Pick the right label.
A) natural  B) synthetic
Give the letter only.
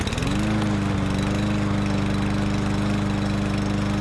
A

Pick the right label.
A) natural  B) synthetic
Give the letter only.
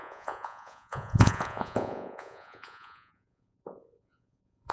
B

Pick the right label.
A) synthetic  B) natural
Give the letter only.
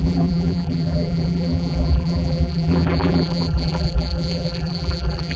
A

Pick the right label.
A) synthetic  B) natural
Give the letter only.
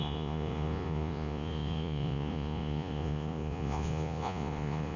A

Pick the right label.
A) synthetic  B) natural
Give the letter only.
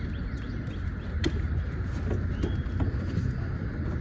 B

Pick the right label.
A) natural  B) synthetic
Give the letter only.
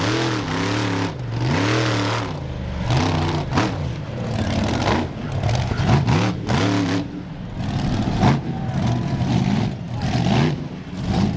A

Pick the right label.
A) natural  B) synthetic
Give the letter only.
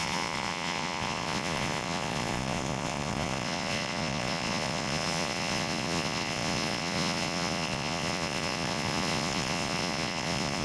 B